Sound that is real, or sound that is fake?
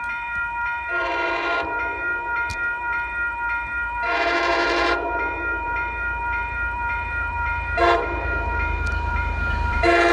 fake